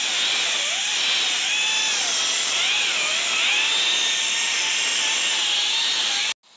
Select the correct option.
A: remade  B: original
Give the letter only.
B